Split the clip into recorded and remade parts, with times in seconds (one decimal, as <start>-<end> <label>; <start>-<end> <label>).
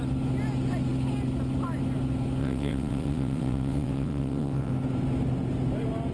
0.0-2.4 recorded; 2.4-4.7 remade; 4.7-6.1 recorded